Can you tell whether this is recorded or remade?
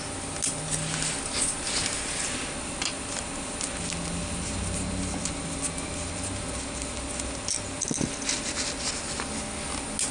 recorded